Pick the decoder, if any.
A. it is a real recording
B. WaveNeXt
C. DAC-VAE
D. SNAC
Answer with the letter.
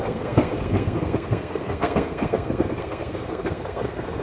D